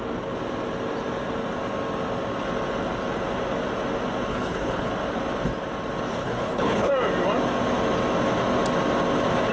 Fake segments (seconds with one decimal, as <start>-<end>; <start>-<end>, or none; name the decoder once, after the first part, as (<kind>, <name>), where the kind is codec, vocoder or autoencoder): 4.3-4.9 (codec, HILCodec); 6.2-6.9